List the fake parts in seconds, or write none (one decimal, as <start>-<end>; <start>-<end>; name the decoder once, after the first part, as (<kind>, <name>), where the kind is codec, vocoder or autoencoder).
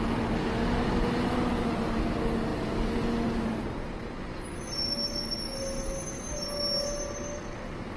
none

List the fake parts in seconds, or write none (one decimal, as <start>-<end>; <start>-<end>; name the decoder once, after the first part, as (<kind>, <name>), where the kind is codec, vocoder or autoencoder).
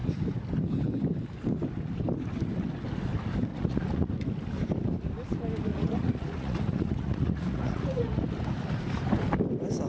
3.5-4.1 (vocoder, Vocos); 5.7-8.2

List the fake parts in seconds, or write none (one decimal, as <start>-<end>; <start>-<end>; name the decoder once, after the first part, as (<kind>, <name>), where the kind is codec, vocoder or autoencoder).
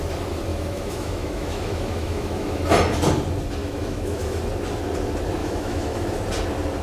0.5-2.6 (autoencoder, DAC-VAE); 3.6-4.4; 5.4-6.2